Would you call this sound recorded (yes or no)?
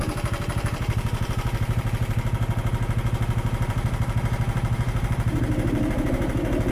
no